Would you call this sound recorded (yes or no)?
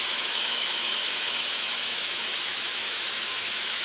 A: no